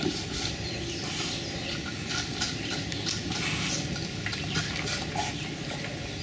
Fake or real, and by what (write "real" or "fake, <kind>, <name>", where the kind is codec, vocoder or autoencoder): real